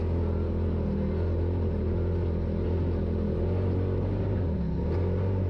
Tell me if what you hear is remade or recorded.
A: recorded